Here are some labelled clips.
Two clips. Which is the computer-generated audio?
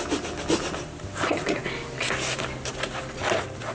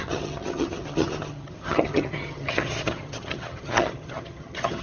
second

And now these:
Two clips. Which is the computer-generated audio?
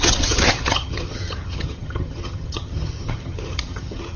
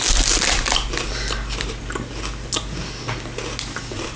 first